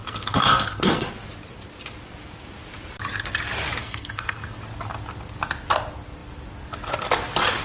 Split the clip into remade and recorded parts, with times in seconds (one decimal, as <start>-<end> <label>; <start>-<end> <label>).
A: 0.0-1.1 remade; 1.1-3.8 recorded; 3.8-4.6 remade; 4.6-7.6 recorded